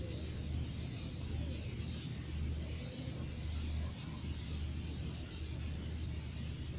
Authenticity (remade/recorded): recorded